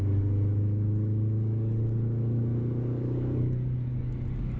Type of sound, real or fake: fake